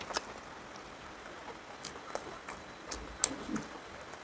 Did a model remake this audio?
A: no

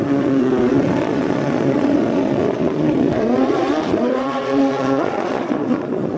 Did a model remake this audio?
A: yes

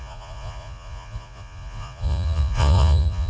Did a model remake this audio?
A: yes